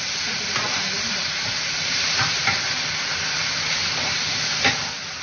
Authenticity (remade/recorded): recorded